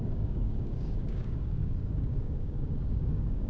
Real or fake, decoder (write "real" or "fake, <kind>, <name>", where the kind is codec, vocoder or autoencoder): fake, codec, DAC